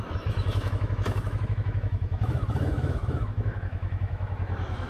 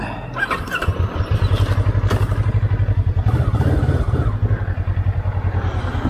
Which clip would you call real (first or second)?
second